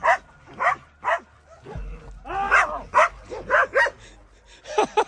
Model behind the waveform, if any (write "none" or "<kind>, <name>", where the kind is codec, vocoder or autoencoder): none